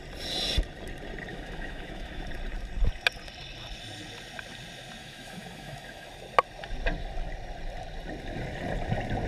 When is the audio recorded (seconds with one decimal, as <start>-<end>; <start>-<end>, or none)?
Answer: 0.0-1.3; 2.3-5.0; 6.1-9.3